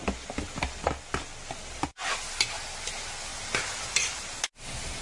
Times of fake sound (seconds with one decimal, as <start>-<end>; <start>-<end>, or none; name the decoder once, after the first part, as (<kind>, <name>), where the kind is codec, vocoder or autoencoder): none